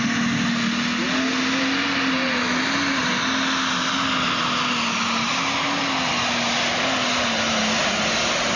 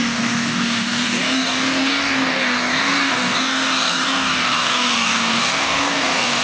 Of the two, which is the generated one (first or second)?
second